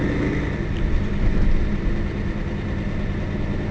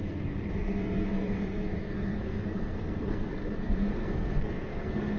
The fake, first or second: second